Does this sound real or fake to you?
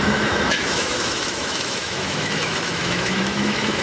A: fake